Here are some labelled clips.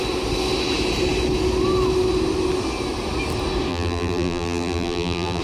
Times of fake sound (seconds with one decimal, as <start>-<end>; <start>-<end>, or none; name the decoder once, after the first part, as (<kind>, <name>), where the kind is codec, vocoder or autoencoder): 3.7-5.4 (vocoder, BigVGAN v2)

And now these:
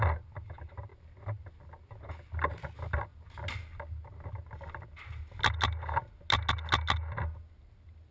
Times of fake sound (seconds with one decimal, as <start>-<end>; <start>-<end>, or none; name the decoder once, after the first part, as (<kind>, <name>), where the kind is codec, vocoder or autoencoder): none

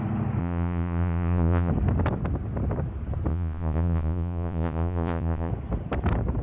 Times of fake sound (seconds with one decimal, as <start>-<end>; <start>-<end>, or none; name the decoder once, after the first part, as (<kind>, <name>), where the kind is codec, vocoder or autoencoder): 0.4-1.7 (vocoder, Vocos); 3.3-5.5

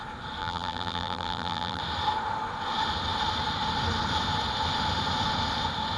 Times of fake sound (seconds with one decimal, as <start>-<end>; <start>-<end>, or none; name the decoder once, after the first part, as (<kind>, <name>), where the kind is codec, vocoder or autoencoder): 0.4-1.8 (vocoder, BigVGAN v2)

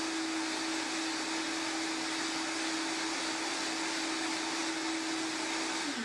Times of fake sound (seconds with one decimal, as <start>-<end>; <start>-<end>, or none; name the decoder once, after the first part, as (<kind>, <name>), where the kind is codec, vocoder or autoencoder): none

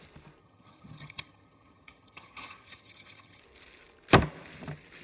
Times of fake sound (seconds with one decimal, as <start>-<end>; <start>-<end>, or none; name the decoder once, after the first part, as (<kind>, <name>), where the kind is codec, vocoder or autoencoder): 0.4-3.4 (vocoder, HiFi-GAN)

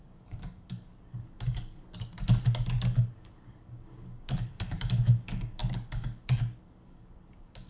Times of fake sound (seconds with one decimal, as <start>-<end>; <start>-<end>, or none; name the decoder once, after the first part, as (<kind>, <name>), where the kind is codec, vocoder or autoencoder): 0.0-7.7 (codec, DAC)

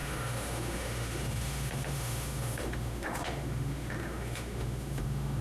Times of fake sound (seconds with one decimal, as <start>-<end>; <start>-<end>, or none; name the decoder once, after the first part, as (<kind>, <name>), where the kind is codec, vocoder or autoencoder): 0.0-5.4 (autoencoder, DAC-VAE)